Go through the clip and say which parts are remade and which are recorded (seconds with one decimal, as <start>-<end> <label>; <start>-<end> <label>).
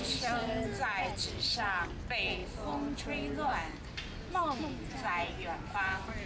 0.0-1.0 remade; 1.0-3.5 recorded; 3.5-6.3 remade